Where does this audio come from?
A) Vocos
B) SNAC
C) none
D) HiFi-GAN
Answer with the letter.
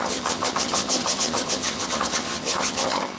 D